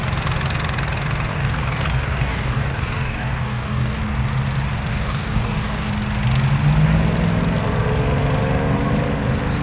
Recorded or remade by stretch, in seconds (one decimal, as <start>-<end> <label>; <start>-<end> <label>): 0.0-1.3 recorded; 1.3-4.0 remade; 4.0-4.9 recorded; 4.9-5.9 remade; 5.9-9.6 recorded